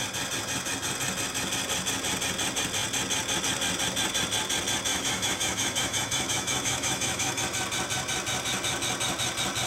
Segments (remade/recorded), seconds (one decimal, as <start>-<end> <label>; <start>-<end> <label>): 0.0-4.9 recorded; 4.9-7.4 remade; 7.4-9.7 recorded